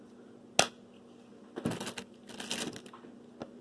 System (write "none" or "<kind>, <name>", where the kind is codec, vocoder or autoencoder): none